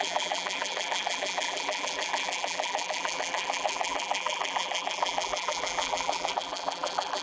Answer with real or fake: fake